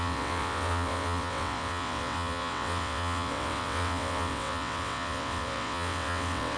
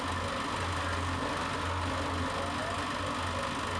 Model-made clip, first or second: first